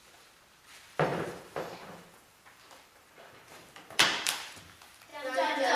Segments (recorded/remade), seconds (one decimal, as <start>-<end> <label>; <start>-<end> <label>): 0.0-1.1 recorded; 1.1-4.6 remade; 4.6-5.1 recorded; 5.1-5.8 remade